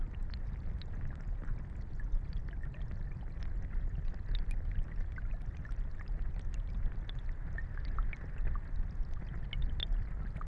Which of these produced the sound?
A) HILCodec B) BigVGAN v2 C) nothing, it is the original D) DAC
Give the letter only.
C